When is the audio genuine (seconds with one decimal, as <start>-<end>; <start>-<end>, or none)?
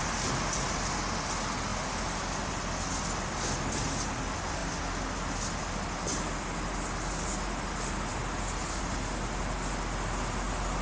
0.0-10.8